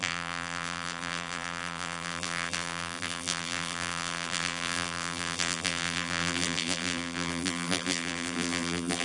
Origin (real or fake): fake